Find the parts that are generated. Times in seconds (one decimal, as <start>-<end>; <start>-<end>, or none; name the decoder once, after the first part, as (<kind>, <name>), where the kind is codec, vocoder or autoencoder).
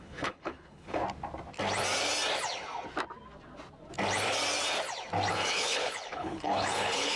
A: 0.0-1.0 (codec, HILCodec); 5.3-7.2